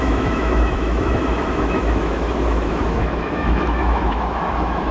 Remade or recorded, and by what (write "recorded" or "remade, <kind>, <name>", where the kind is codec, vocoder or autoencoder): remade, autoencoder, DAC-VAE